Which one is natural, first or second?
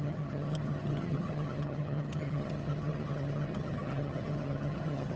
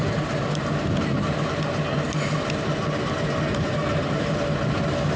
second